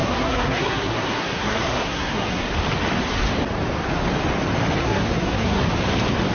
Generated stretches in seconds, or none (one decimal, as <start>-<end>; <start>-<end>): 0.0-2.4; 4.8-5.6